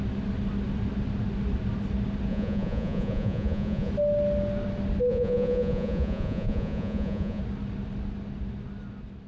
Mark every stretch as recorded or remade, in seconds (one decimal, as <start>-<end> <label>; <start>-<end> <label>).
0.0-2.3 recorded; 2.3-3.9 remade; 3.9-5.1 recorded; 5.1-7.4 remade; 7.4-9.3 recorded

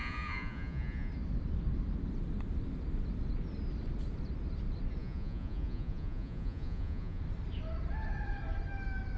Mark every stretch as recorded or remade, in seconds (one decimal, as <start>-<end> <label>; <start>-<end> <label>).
0.0-1.1 remade; 1.1-5.0 recorded; 5.0-7.2 remade; 7.2-9.2 recorded

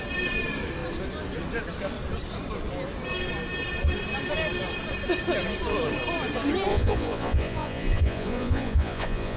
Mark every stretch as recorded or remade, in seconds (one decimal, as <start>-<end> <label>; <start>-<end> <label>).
0.0-6.7 recorded; 6.7-9.4 remade

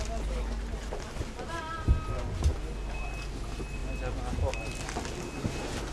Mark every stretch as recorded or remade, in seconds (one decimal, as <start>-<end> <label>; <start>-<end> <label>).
0.0-5.9 recorded

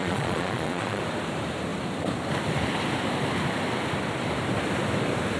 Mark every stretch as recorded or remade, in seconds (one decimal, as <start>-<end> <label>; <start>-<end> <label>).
0.0-1.0 remade; 1.0-5.4 recorded

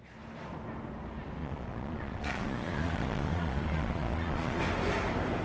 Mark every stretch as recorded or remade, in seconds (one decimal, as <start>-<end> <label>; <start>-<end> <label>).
0.0-1.4 recorded; 1.4-4.6 remade; 4.6-5.4 recorded

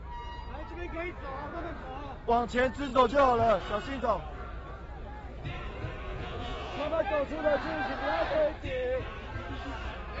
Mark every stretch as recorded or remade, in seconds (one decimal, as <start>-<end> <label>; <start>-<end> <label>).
0.0-1.1 recorded; 1.1-1.7 remade; 1.7-6.1 recorded; 6.1-7.0 remade; 7.0-10.2 recorded

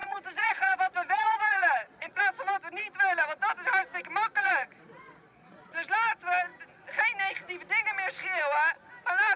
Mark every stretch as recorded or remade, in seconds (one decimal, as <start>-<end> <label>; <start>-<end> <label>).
0.0-2.2 remade; 2.2-4.4 recorded; 4.4-5.9 remade; 5.9-9.4 recorded